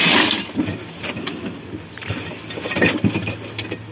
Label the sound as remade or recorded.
recorded